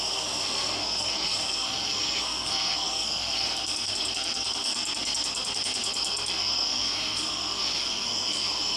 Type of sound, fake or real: fake